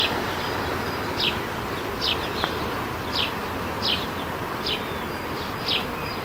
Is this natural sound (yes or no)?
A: yes